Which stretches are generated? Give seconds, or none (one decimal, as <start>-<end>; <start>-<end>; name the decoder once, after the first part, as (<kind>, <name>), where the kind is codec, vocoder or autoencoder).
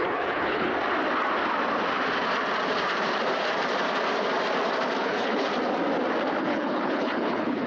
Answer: 0.0-0.7 (codec, HILCodec); 5.0-5.5; 6.4-7.7